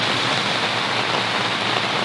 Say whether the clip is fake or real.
real